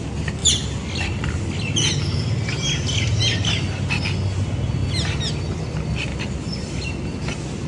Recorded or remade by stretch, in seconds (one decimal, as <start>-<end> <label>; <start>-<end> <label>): 0.0-0.4 recorded; 0.4-3.5 remade; 3.5-6.1 recorded; 6.1-6.9 remade; 6.9-7.7 recorded